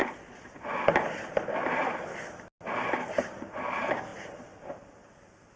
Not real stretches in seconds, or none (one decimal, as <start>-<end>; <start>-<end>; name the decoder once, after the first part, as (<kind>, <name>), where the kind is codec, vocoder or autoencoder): none